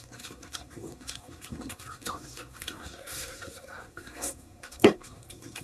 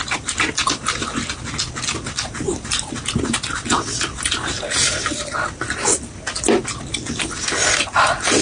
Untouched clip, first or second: second